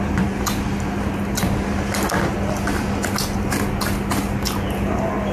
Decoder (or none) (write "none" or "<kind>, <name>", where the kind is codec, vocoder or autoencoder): none